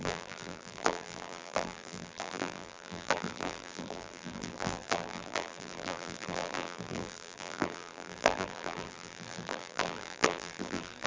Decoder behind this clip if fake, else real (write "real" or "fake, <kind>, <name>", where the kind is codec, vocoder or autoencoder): fake, vocoder, BigVGAN v2